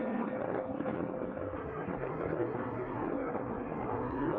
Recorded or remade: remade